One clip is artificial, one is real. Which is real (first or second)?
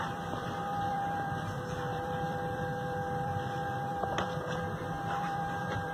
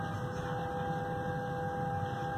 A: second